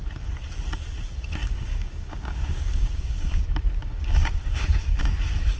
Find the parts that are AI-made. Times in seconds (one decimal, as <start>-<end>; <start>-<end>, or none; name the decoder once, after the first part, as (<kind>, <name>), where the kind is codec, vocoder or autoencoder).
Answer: 1.4-3.4 (codec, DAC); 3.8-5.1

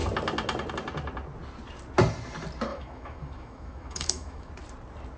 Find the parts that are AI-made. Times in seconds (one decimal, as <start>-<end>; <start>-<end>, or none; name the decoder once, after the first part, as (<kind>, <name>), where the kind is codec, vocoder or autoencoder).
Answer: 2.7-4.5 (autoencoder, DAC-VAE)